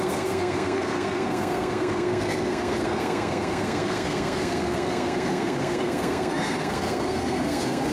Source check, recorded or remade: remade